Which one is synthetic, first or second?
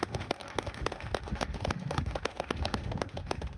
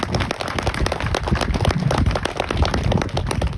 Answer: first